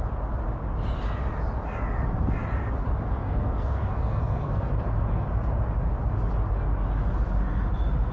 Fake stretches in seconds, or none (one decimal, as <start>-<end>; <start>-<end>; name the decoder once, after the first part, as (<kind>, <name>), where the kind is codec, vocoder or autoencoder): 3.2-4.7 (codec, SNAC)